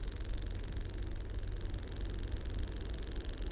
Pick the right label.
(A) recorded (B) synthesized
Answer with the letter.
A